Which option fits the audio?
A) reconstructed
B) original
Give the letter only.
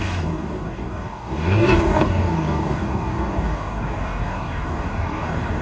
A